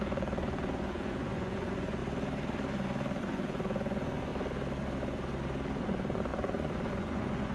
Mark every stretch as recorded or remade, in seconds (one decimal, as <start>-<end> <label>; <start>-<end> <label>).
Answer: 0.0-2.0 remade; 2.0-3.2 recorded; 3.2-4.3 remade; 4.3-5.8 recorded; 5.8-7.5 remade